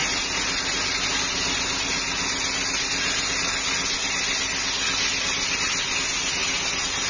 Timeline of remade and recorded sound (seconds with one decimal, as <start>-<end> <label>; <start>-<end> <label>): 0.0-7.1 recorded